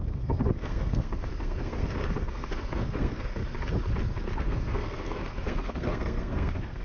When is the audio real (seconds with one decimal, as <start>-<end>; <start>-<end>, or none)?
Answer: 3.4-4.4